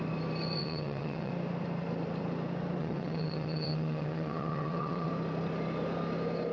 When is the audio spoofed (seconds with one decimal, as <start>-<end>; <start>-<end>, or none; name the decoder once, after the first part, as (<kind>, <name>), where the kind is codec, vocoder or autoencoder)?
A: 0.6-1.3 (vocoder, WaveNeXt); 2.8-5.1